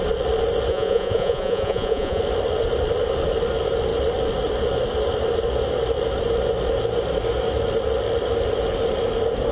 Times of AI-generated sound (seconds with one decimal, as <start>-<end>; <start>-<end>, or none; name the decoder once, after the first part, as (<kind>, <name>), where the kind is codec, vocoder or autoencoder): 0.7-2.2 (vocoder, Vocos)